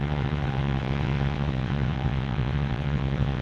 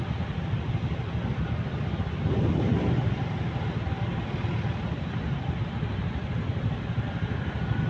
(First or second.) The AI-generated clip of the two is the first